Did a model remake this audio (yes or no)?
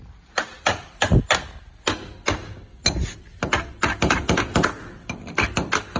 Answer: no